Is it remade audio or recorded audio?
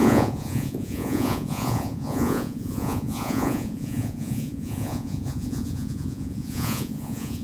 remade